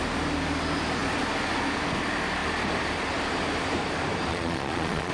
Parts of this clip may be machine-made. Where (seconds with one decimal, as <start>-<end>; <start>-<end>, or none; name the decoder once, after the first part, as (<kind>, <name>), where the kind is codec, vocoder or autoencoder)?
4.3-5.1 (vocoder, Vocos)